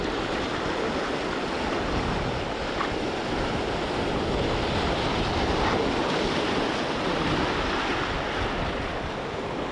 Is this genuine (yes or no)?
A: yes